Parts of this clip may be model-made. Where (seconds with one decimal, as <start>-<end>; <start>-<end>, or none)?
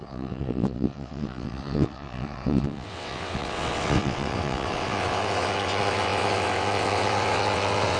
0.0-8.0